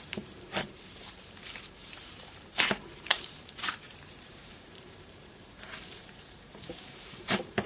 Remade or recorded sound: remade